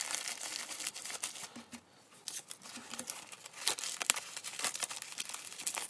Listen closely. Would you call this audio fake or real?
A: real